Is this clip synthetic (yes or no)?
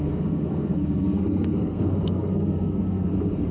yes